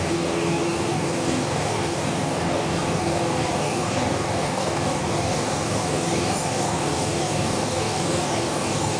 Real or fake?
fake